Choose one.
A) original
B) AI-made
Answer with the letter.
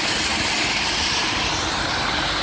A